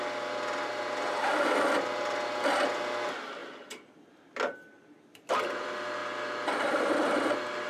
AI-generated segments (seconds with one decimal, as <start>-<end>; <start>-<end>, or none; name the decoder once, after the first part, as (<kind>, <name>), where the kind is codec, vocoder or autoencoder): none